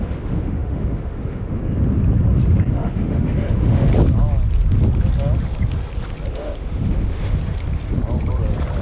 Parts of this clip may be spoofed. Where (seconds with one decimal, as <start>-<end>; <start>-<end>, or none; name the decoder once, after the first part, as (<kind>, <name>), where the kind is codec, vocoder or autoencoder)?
0.0-1.6 (autoencoder, DAC-VAE); 2.7-3.9; 6.3-7.4